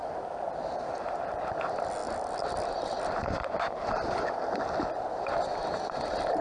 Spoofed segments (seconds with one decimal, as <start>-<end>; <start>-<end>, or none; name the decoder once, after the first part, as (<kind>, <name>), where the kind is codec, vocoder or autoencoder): none